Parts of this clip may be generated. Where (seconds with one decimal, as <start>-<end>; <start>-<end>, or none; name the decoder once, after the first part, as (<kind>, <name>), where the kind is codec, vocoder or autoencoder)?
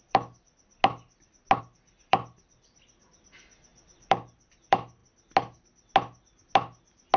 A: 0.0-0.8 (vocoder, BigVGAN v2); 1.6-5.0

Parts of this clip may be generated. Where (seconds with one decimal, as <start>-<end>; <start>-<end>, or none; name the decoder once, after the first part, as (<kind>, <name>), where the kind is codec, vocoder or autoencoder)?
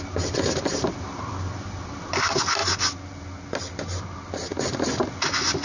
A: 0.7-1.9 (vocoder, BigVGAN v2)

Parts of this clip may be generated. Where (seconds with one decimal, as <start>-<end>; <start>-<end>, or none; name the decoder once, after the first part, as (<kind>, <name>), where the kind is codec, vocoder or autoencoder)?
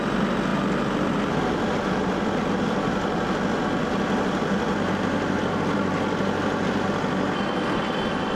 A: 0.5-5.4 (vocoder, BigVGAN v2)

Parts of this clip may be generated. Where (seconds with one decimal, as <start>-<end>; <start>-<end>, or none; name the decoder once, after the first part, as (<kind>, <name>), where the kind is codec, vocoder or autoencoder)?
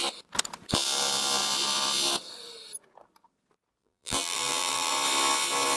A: 3.8-4.9 (vocoder, BigVGAN v2)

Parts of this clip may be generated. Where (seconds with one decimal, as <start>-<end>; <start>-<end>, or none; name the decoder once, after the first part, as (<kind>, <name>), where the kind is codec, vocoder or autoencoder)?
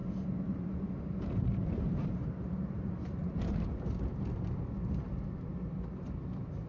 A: 0.0-4.0 (vocoder, BigVGAN v2)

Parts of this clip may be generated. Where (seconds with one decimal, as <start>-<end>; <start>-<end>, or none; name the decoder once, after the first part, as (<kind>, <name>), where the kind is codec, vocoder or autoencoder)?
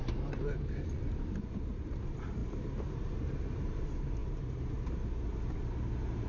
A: 0.0-6.3 (vocoder, BigVGAN v2)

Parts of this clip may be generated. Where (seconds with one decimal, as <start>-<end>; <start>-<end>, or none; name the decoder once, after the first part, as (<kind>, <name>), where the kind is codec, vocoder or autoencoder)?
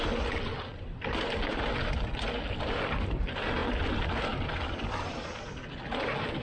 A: none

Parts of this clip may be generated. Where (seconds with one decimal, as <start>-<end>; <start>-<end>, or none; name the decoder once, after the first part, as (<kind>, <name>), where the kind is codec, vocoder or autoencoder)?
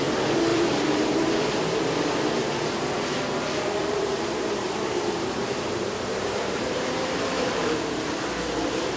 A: 0.5-1.4 (vocoder, BigVGAN v2); 3.8-8.0